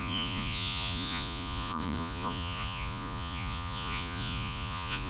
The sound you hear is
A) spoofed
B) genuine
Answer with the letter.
A